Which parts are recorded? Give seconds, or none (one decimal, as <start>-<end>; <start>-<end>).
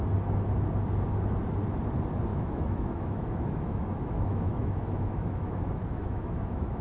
0.0-2.3